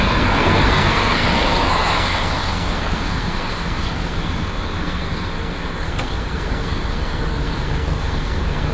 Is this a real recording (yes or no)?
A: no